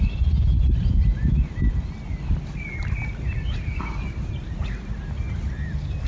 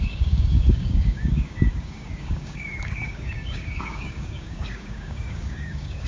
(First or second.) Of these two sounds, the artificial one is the second